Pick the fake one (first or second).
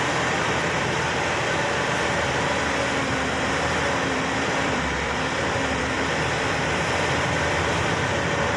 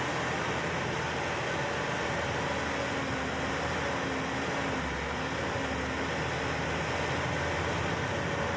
first